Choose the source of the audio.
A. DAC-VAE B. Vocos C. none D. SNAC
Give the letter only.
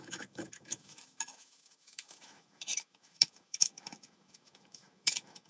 A